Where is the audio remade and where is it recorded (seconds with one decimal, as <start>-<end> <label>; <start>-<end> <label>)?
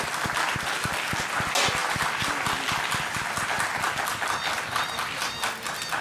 0.0-1.8 recorded; 1.8-4.2 remade; 4.2-6.0 recorded